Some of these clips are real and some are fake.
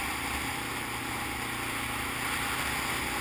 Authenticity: real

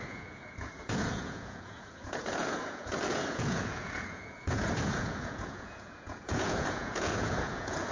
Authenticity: fake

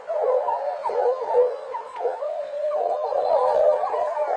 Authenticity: fake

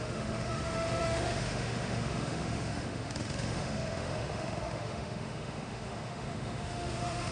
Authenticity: fake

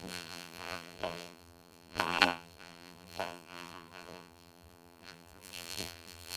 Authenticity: fake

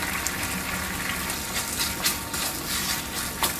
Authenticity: real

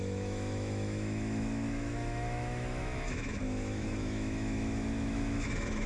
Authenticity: fake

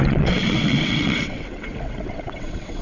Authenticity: fake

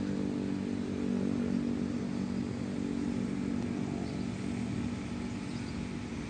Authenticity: real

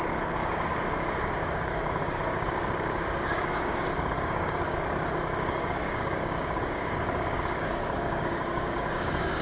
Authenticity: fake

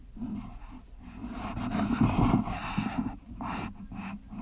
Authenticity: real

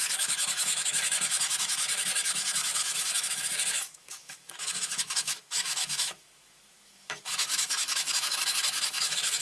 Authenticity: fake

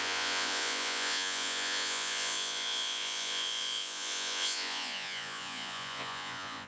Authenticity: fake